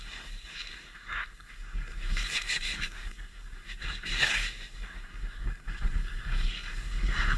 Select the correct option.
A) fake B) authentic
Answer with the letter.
A